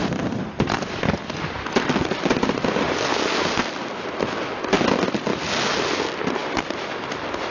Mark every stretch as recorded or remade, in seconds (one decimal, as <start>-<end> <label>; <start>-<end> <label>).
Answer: 0.0-7.5 recorded